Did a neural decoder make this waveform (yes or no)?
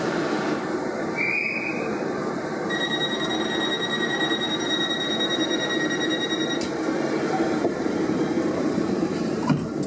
yes